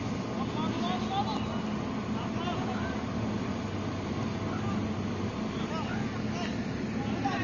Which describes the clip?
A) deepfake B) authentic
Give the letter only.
B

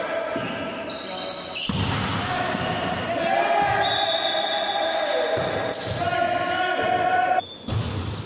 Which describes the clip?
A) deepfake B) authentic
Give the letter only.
B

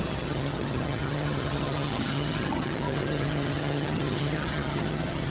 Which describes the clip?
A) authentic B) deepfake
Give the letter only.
B